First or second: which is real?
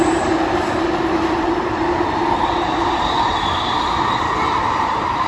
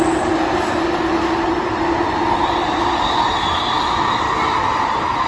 second